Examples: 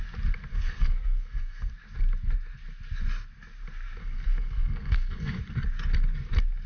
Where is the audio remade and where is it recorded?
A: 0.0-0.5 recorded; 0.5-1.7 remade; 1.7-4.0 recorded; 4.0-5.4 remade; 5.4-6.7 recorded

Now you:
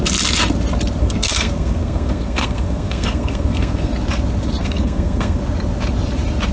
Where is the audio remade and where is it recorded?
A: 0.0-1.0 recorded; 1.0-3.9 remade; 3.9-4.6 recorded; 4.6-5.4 remade; 5.4-6.5 recorded

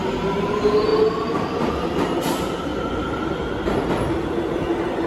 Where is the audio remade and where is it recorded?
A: 0.0-5.1 recorded